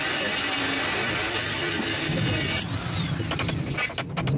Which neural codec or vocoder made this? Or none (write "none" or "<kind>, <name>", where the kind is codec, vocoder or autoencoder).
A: none